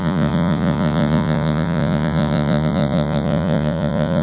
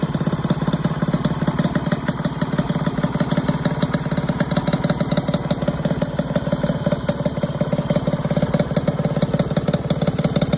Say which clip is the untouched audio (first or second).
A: second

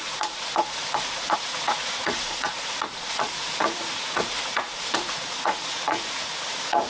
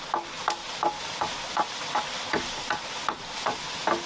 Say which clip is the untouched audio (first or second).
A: second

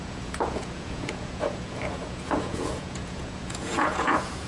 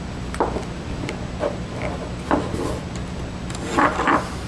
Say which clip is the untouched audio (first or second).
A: second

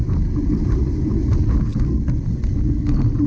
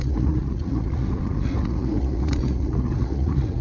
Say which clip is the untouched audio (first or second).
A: first